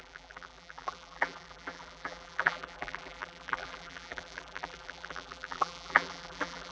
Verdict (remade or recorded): remade